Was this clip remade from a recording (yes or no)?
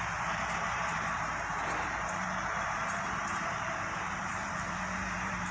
yes